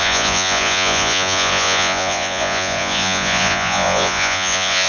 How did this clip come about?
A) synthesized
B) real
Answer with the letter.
A